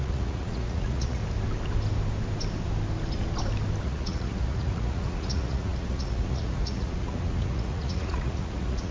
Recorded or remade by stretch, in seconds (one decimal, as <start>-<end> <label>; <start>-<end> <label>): 0.0-1.2 remade; 1.2-3.8 recorded; 3.8-8.9 remade